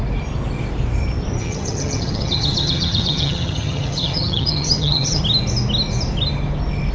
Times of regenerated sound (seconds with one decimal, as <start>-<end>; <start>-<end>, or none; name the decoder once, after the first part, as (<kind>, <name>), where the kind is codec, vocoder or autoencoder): 1.4-5.2 (vocoder, HiFi-GAN)